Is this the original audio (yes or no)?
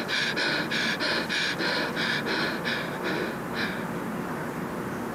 yes